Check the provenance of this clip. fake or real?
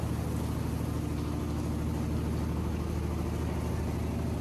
real